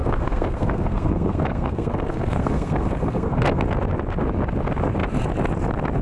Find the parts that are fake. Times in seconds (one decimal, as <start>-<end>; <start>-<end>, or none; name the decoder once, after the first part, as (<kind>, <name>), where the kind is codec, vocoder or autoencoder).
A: 0.0-3.6 (codec, SNAC)